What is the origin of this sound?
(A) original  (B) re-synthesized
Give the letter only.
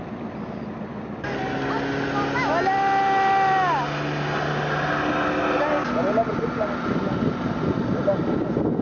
A